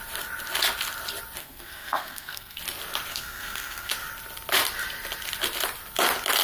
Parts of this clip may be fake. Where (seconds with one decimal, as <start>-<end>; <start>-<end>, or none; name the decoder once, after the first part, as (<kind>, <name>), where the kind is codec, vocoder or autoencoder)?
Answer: 1.4-2.6 (codec, SNAC); 3.1-3.9